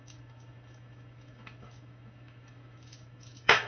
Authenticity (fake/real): fake